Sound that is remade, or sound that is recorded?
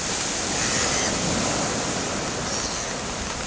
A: recorded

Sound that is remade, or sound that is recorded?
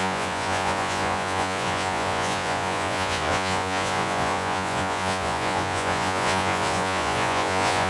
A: remade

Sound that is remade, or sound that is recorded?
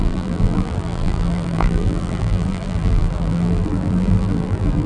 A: remade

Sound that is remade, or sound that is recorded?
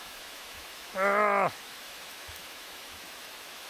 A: remade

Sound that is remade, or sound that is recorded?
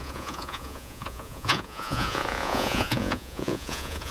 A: remade